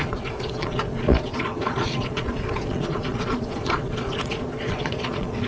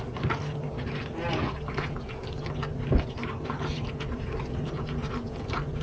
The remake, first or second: first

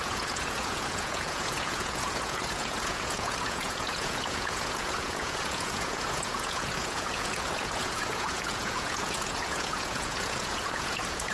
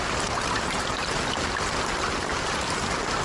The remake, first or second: first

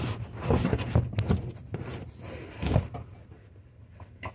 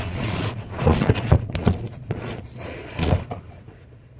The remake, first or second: second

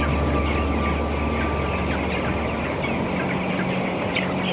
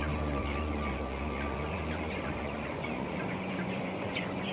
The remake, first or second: second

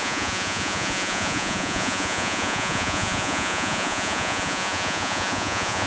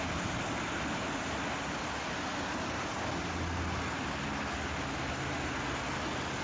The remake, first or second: first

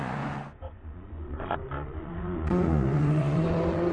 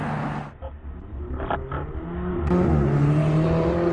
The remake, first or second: first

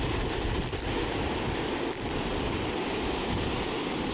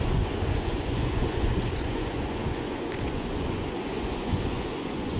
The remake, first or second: second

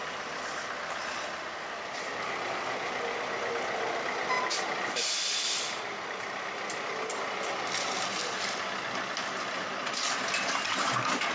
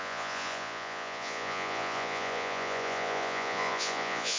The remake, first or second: second